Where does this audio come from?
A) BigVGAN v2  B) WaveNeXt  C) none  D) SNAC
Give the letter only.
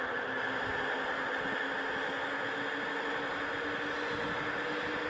C